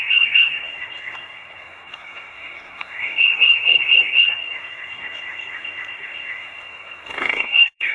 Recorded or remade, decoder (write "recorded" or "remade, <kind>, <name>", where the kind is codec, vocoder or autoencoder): remade, codec, SNAC